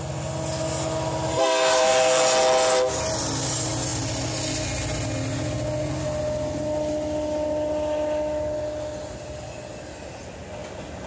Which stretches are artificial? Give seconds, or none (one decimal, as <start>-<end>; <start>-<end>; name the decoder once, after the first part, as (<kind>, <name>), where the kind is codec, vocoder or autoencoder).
1.3-2.2 (codec, SNAC)